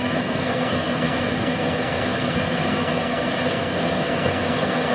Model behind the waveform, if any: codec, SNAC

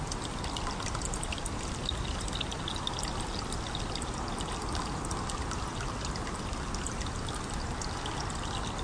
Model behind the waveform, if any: none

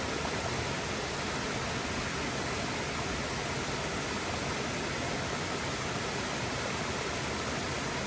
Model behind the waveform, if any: none